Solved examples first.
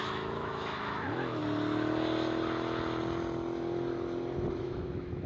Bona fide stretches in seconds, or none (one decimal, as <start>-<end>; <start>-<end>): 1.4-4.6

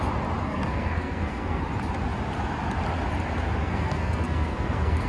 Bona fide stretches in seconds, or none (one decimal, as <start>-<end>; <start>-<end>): 0.0-0.4; 1.6-3.6

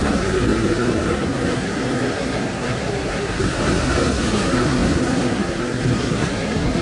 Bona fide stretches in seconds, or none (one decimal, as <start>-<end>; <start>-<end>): none